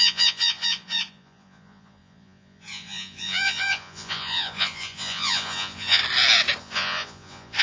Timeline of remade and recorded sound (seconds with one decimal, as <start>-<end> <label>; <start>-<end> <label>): 0.0-6.0 remade; 6.0-6.6 recorded; 6.6-7.6 remade